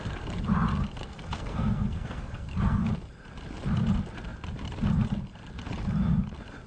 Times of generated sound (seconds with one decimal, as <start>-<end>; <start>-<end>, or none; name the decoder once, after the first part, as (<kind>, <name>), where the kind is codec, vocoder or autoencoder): 1.0-2.9 (codec, SNAC)